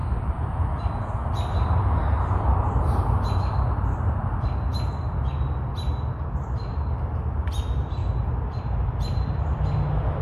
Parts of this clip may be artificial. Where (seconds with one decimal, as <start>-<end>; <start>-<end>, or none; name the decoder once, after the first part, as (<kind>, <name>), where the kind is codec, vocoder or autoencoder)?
0.0-0.9 (vocoder, BigVGAN v2); 2.0-4.3; 4.7-5.3